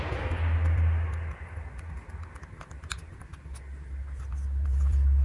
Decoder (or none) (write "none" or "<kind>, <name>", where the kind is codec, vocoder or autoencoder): none